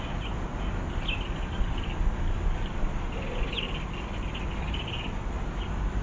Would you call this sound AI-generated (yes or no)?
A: no